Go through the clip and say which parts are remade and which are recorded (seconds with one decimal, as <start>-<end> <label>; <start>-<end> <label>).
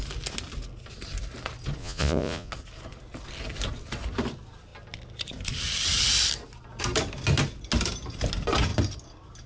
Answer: 0.0-1.8 recorded; 1.8-2.5 remade; 2.5-9.5 recorded